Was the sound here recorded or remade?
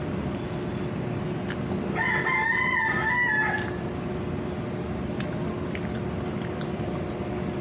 recorded